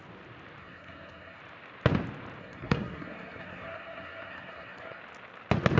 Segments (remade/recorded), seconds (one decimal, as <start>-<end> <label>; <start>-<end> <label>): 0.0-0.6 recorded; 0.6-1.4 remade; 1.4-2.4 recorded; 2.4-5.0 remade; 5.0-5.8 recorded